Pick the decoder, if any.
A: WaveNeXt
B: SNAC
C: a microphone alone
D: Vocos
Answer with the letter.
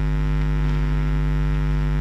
C